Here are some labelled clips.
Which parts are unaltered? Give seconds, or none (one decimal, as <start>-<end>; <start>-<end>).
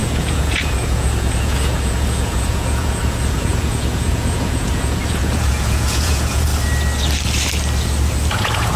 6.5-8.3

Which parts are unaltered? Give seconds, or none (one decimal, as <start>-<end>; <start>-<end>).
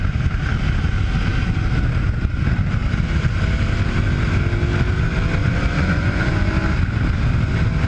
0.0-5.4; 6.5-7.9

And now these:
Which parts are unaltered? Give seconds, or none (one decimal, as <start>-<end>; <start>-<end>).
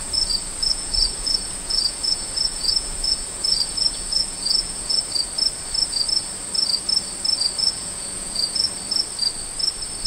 5.0-7.6; 8.7-10.1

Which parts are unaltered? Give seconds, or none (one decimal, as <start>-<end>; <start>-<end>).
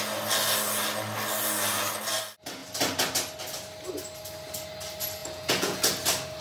0.0-5.2; 5.8-6.4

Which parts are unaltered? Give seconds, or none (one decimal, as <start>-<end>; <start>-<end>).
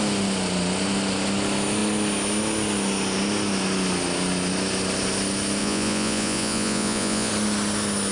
0.0-5.6; 7.3-8.1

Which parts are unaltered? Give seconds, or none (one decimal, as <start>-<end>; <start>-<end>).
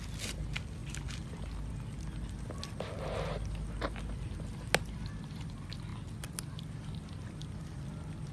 0.0-8.3